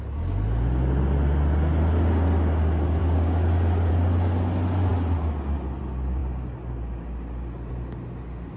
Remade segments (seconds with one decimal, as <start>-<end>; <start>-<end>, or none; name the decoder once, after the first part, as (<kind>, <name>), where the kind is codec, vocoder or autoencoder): 3.0-3.9 (codec, DAC)